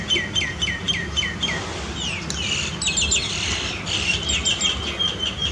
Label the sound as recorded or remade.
recorded